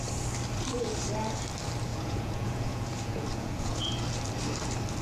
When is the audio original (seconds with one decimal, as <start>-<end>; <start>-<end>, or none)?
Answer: 0.0-1.9; 3.9-5.0